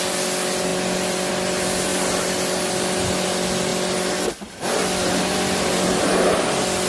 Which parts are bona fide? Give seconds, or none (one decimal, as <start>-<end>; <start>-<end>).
0.0-6.9